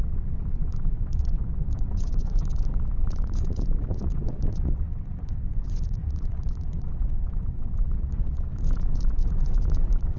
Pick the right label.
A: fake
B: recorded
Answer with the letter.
A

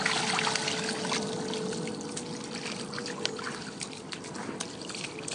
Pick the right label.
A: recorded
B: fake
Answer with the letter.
A